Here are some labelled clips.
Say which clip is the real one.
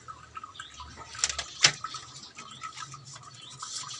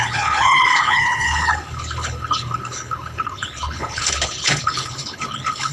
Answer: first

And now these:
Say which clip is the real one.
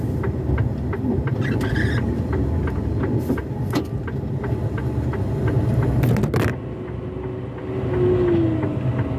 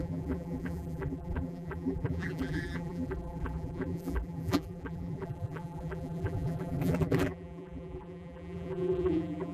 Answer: first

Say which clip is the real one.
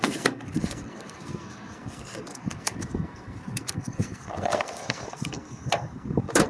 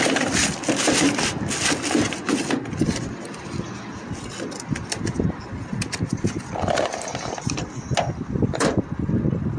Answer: second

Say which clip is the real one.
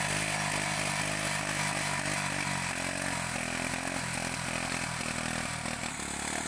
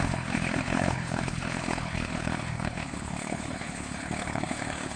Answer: first